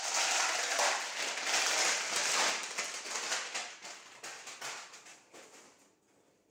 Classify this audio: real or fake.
real